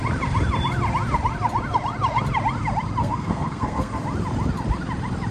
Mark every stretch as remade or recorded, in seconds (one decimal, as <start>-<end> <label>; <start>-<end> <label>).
0.0-3.0 recorded; 3.0-4.0 remade; 4.0-5.3 recorded